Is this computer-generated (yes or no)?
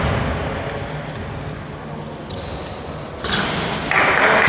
no